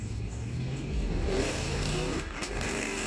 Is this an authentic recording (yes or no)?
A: no